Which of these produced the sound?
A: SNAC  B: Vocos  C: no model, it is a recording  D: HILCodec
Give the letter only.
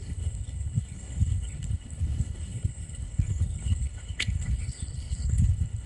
D